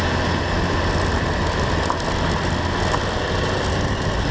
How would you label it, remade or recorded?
recorded